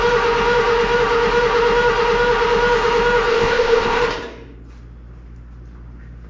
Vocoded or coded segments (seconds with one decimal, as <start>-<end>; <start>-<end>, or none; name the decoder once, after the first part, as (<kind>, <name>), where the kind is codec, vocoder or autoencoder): 3.3-4.0 (codec, ZipCodec)